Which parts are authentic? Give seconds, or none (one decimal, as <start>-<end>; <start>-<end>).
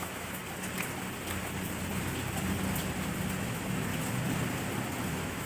0.4-3.4; 3.9-5.1